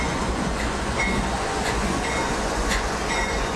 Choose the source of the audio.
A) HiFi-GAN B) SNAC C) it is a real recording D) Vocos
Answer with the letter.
D